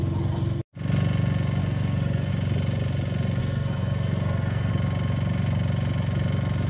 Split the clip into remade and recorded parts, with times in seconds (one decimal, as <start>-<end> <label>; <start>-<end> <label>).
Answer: 0.0-1.6 recorded; 1.6-2.3 remade; 2.3-3.4 recorded; 3.4-4.7 remade; 4.7-6.7 recorded